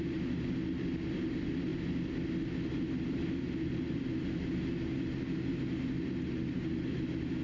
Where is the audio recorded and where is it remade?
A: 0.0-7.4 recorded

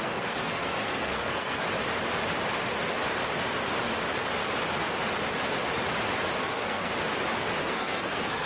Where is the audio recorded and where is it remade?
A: 0.0-1.6 remade; 1.6-6.4 recorded; 6.4-6.9 remade; 6.9-7.6 recorded; 7.6-8.5 remade

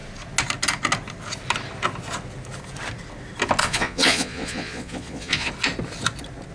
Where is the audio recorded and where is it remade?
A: 0.0-3.6 recorded; 3.6-5.5 remade; 5.5-6.5 recorded

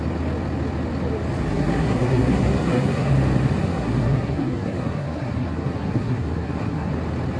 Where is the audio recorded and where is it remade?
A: 0.0-1.5 recorded; 1.5-3.1 remade; 3.1-3.6 recorded; 3.6-6.9 remade; 6.9-7.4 recorded

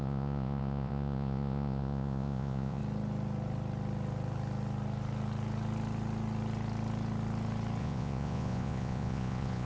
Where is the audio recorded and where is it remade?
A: 0.0-2.8 remade; 2.8-7.8 recorded; 7.8-9.7 remade

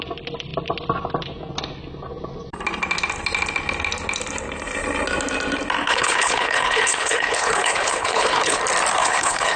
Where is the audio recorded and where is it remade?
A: 0.0-5.8 recorded; 5.8-8.6 remade; 8.6-9.0 recorded; 9.0-9.6 remade